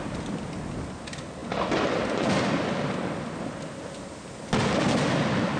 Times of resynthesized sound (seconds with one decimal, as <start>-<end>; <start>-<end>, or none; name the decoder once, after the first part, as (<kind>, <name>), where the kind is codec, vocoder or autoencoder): none